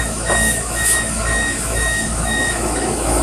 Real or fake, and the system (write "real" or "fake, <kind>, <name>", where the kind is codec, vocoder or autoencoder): fake, autoencoder, DAC-VAE